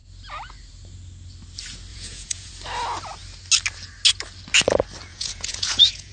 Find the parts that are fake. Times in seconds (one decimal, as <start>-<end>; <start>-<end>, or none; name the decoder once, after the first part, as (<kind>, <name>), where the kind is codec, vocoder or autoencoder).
1.9-2.5 (vocoder, Vocos); 5.1-6.1